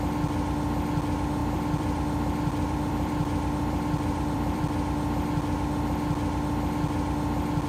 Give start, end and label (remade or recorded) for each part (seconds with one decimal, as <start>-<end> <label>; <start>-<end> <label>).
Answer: 0.0-1.4 recorded; 1.4-4.6 remade; 4.6-7.7 recorded